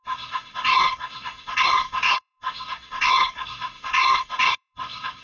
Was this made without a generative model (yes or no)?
no